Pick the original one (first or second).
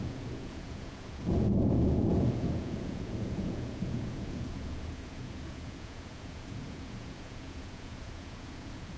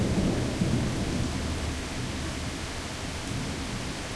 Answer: second